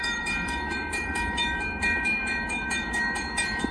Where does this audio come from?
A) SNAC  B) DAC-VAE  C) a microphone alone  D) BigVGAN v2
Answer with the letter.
B